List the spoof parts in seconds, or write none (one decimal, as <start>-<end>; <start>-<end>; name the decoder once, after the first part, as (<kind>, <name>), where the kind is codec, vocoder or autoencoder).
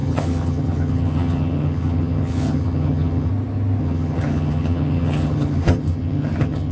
0.0-3.3 (vocoder, HiFi-GAN); 3.8-6.7